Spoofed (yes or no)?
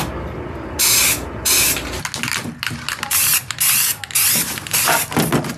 no